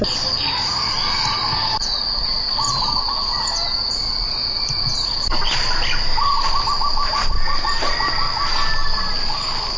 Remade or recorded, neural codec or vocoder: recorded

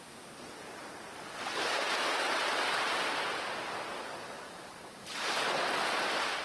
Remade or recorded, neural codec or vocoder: recorded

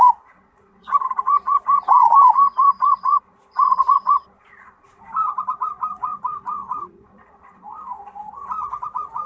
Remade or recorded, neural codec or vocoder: remade, vocoder, Vocos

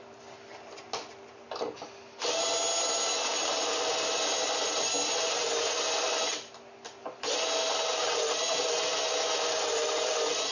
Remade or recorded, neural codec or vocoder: recorded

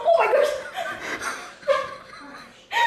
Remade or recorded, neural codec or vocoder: recorded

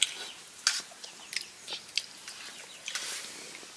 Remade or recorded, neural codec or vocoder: recorded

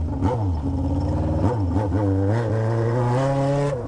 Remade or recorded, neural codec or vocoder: recorded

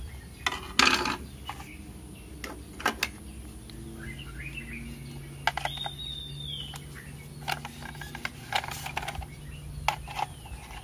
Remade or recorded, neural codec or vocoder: recorded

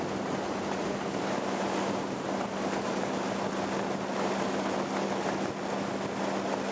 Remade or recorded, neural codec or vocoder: recorded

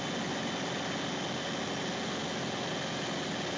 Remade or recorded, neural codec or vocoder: recorded